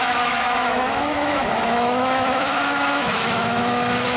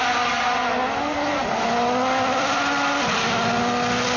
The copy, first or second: first